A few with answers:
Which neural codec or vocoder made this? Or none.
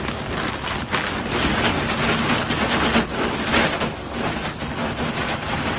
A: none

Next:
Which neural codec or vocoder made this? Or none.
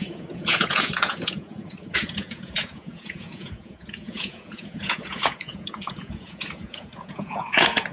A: vocoder, Vocos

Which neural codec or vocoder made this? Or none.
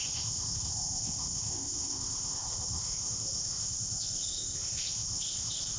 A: codec, ZipCodec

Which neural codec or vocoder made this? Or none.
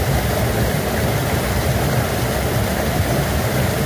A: none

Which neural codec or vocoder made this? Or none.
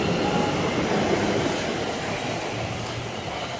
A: none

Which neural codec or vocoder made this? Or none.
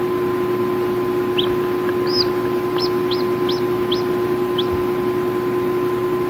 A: none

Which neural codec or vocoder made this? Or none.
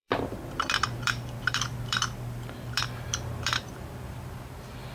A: vocoder, BigVGAN v2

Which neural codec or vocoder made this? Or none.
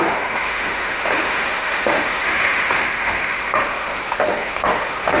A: autoencoder, DAC-VAE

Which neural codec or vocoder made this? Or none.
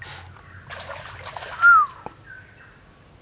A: none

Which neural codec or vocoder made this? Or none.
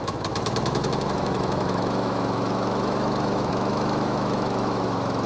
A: autoencoder, DAC-VAE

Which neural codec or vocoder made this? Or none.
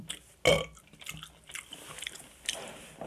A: none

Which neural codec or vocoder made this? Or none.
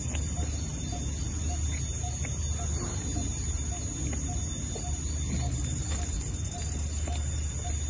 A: none